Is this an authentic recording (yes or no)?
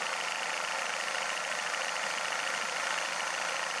yes